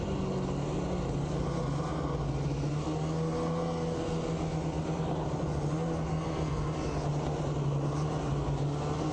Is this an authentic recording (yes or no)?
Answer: yes